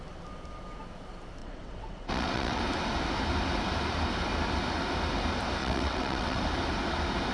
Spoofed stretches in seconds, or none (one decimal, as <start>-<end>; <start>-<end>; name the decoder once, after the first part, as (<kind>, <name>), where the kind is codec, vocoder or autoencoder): 1.4-2.6 (vocoder, WaveNeXt); 5.6-6.4